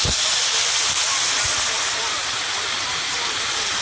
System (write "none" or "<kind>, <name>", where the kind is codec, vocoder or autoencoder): none